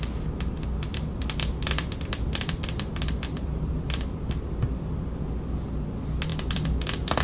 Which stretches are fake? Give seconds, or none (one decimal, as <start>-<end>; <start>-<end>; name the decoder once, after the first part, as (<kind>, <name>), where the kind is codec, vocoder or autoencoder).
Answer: 0.9-5.2 (vocoder, BigVGAN v2); 6.3-7.2